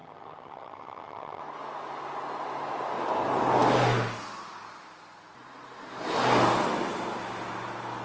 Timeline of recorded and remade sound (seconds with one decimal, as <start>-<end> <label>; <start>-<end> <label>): 0.0-1.4 remade; 1.4-8.0 recorded

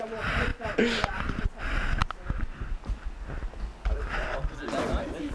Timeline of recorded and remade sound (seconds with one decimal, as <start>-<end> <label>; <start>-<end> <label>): 0.0-5.3 recorded

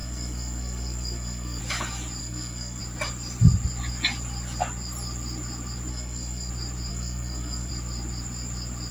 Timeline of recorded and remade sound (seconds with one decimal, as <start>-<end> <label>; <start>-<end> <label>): 0.0-1.6 remade; 1.6-2.2 recorded; 2.2-2.8 remade; 2.8-5.9 recorded; 5.9-6.5 remade; 6.5-6.9 recorded; 6.9-7.7 remade; 7.7-8.9 recorded

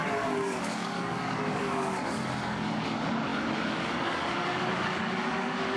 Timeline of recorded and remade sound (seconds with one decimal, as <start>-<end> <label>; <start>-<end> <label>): 0.0-5.8 remade